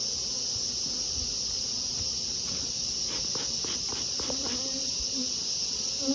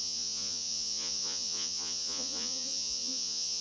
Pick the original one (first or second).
first